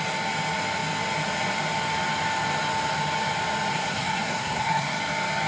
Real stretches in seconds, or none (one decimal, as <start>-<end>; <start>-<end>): 0.0-3.7; 5.0-5.5